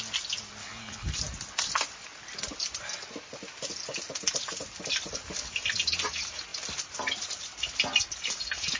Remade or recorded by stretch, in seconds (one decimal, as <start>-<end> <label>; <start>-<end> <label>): 0.0-0.6 recorded; 0.6-1.2 remade; 1.2-8.8 recorded